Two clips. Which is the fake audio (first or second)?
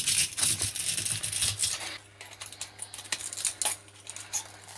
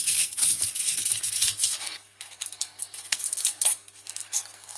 second